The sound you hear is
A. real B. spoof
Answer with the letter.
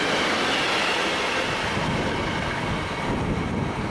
A